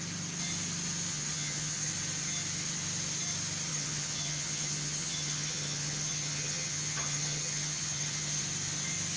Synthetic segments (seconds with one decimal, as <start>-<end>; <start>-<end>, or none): 1.1-1.9; 3.7-8.4